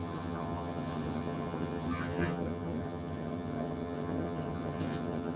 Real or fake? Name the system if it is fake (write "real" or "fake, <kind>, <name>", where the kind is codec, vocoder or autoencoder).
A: fake, vocoder, HiFi-GAN